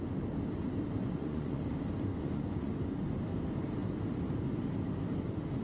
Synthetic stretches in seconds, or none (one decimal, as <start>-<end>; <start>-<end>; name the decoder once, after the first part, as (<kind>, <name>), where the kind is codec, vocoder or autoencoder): 1.0-1.6 (vocoder, Vocos); 2.1-2.7